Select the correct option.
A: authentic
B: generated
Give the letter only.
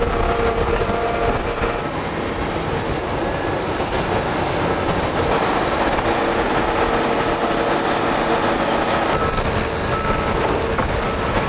A